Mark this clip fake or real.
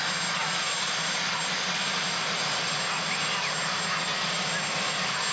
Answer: real